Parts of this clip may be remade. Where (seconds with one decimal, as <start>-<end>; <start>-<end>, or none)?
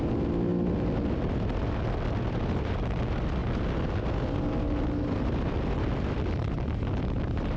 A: none